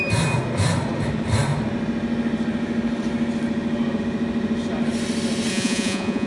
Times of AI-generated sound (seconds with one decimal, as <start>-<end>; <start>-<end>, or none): 5.5-6.3